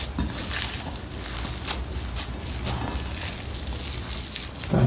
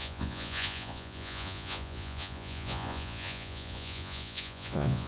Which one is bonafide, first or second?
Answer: first